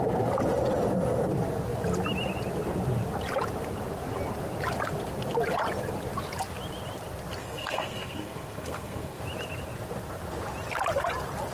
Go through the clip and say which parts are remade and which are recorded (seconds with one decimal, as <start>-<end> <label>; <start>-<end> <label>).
0.0-7.4 recorded; 7.4-9.2 remade; 9.2-11.5 recorded